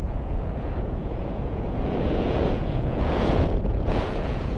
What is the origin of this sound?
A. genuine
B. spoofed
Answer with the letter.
B